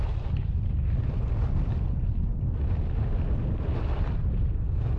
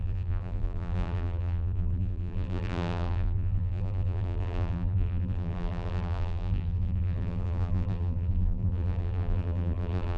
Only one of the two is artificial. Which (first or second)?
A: second